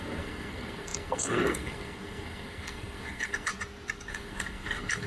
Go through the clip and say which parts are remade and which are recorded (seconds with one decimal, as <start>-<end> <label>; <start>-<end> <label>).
0.0-3.5 remade; 3.5-4.1 recorded; 4.1-5.1 remade